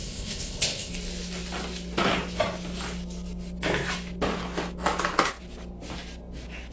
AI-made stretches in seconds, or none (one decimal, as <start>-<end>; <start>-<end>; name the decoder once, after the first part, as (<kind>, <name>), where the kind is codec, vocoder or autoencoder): 0.0-0.9 (codec, ZipCodec)